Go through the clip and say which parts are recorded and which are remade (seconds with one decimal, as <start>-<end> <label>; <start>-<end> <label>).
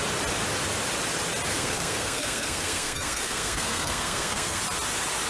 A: 0.0-1.5 recorded; 1.5-4.6 remade; 4.6-5.3 recorded